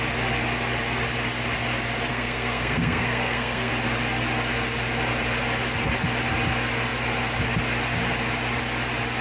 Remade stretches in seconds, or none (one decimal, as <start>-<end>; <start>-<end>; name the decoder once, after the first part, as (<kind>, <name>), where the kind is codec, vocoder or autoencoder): 2.1-3.7 (codec, SNAC)